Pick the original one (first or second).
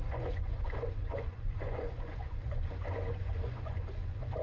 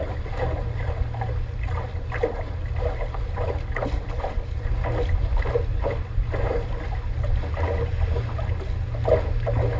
second